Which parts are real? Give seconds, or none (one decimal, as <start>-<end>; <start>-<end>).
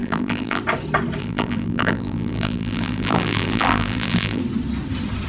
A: 0.6-1.2; 4.4-5.3